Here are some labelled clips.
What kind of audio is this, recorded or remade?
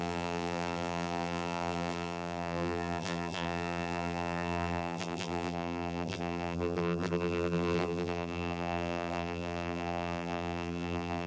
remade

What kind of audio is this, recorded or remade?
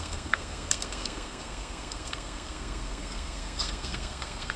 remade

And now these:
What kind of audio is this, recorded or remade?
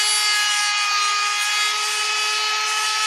recorded